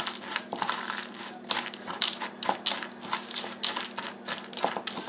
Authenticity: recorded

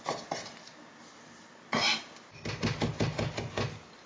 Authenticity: recorded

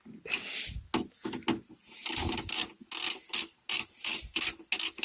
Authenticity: recorded